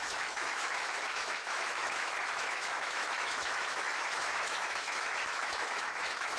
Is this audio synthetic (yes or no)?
yes